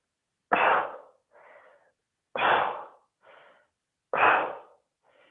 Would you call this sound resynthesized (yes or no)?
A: no